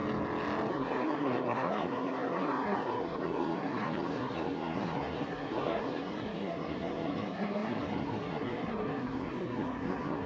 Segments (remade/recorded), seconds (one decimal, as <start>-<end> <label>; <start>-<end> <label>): 0.0-0.7 recorded; 0.7-10.3 remade

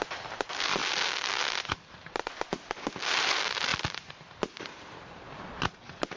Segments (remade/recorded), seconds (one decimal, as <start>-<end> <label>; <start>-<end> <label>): 0.0-6.2 recorded

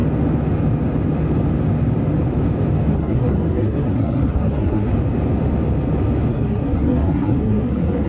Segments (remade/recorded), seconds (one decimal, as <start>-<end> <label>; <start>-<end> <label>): 0.0-2.9 recorded; 2.9-4.9 remade; 4.9-6.3 recorded; 6.3-8.1 remade

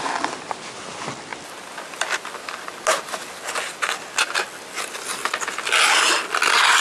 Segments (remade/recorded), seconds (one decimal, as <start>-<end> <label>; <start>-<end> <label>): 0.0-6.8 recorded

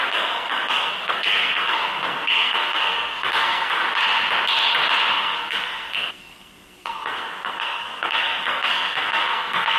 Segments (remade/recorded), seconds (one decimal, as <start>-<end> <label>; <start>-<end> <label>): 0.0-3.8 remade; 3.8-5.1 recorded; 5.1-9.8 remade

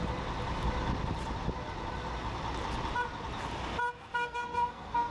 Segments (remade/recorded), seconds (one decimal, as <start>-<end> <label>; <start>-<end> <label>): 0.0-3.9 recorded; 3.9-5.1 remade